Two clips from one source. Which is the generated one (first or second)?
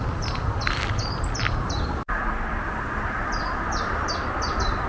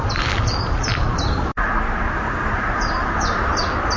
first